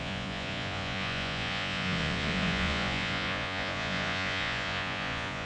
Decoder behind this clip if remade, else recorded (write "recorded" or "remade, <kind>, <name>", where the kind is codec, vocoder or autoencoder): remade, vocoder, Vocos